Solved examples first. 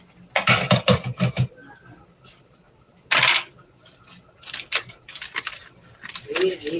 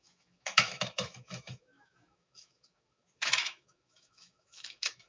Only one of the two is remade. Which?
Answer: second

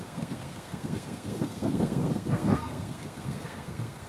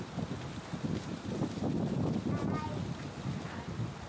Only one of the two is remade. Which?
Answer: first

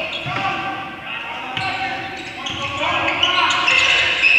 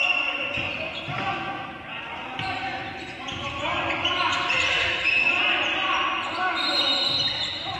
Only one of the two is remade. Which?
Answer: second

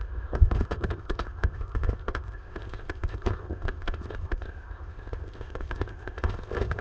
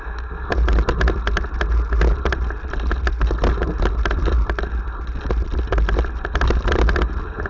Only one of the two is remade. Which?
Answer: first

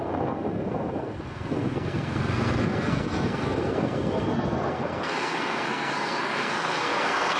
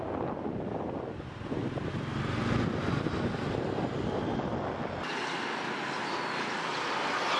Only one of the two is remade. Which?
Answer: first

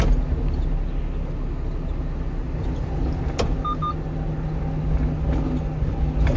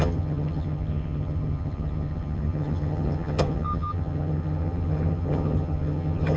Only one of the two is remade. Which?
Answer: second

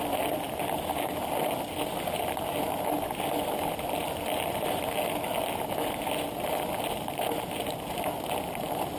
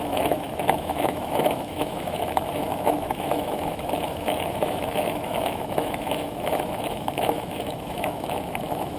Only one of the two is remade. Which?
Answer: second